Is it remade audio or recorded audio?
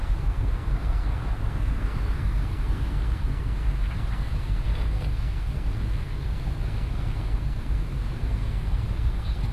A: remade